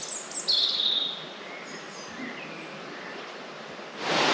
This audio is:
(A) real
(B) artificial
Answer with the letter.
A